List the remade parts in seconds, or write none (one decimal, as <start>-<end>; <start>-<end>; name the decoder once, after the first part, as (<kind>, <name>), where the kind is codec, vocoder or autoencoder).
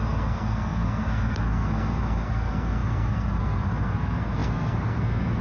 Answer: 0.0-5.4 (codec, SNAC)